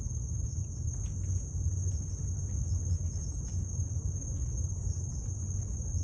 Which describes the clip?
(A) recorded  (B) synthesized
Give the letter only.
A